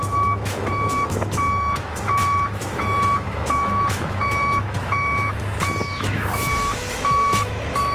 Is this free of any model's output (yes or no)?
no